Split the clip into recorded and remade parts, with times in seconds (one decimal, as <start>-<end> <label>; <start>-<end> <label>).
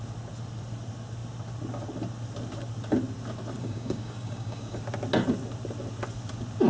0.0-3.6 recorded; 3.6-4.8 remade; 4.8-6.7 recorded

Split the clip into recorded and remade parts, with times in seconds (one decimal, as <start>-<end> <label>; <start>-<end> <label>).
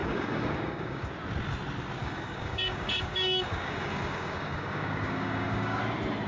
0.0-1.1 remade; 1.1-2.0 recorded; 2.0-5.8 remade; 5.8-6.3 recorded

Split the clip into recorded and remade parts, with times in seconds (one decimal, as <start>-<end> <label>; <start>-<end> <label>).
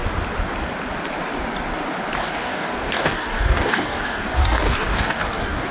0.0-2.2 recorded; 2.2-5.7 remade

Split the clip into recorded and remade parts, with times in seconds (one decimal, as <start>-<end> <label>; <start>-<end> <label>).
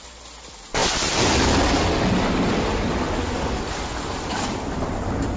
0.0-5.4 recorded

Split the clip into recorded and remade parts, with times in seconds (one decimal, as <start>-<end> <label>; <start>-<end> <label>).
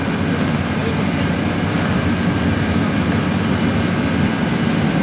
0.0-5.0 recorded